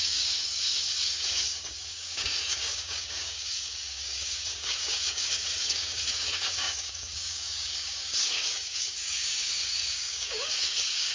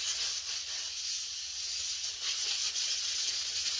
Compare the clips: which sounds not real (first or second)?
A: first